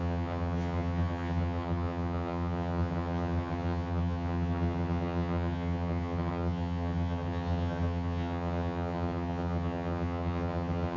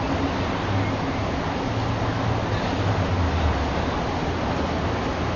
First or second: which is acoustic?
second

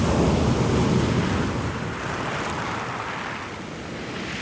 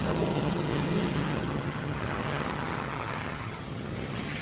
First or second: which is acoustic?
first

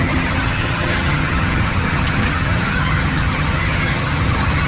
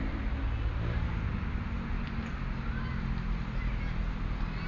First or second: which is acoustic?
second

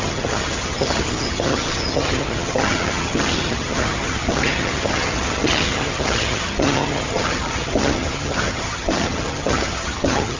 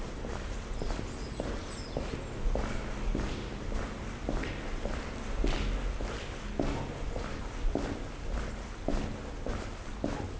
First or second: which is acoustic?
second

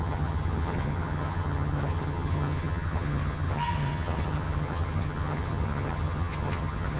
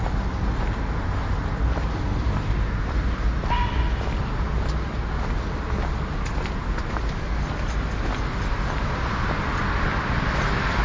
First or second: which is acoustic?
second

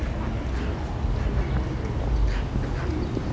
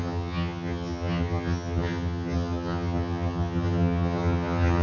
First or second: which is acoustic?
first